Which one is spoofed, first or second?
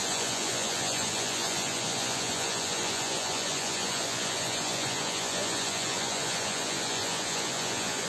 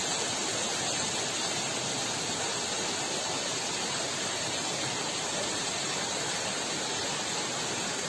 first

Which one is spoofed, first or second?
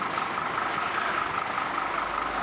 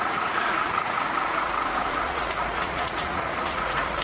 second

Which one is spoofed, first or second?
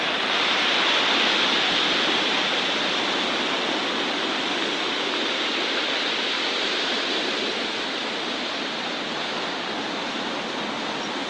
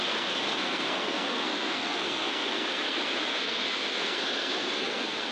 second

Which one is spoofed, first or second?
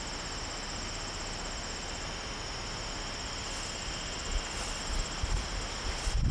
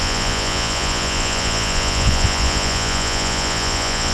second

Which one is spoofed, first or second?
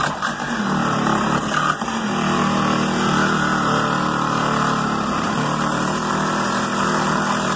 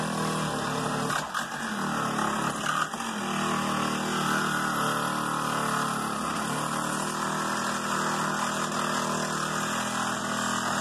first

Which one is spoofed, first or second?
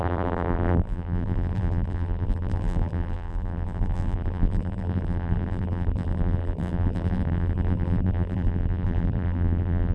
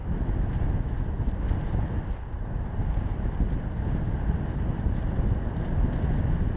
first